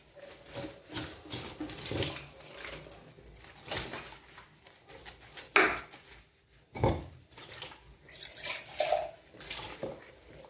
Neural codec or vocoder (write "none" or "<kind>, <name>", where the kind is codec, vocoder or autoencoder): none